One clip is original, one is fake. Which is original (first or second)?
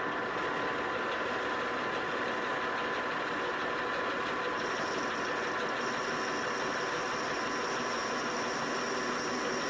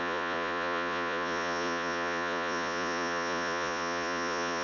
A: first